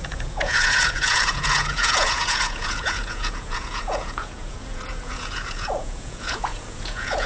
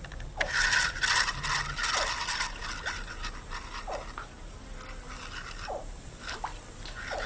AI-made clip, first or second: first